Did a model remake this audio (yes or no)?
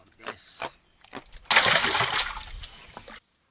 no